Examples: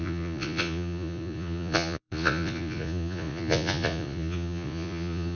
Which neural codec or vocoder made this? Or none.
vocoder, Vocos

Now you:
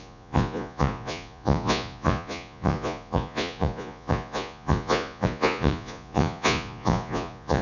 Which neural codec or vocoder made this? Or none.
vocoder, Vocos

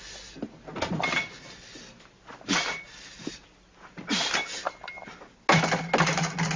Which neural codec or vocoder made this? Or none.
none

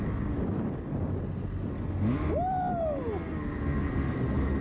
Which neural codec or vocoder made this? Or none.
none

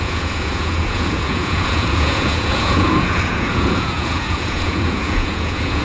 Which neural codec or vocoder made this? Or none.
vocoder, Vocos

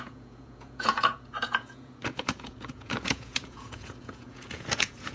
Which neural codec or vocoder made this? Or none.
vocoder, Vocos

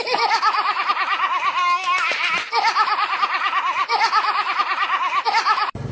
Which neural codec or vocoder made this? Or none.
none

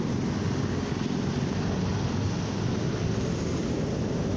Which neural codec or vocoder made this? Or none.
none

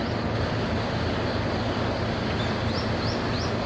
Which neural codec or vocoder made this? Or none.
none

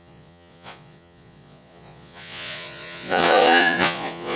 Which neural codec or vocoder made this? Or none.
vocoder, Vocos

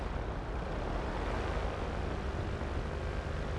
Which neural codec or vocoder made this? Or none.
none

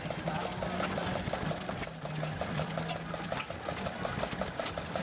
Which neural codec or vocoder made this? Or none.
none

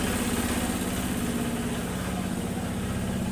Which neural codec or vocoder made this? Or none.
none